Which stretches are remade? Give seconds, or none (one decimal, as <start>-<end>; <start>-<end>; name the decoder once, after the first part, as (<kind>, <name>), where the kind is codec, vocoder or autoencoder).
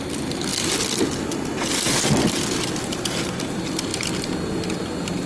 none